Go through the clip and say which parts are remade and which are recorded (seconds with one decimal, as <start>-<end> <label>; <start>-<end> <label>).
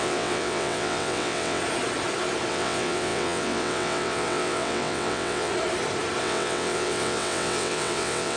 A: 0.0-1.6 remade; 1.6-2.5 recorded; 2.5-5.5 remade; 5.5-6.2 recorded; 6.2-8.4 remade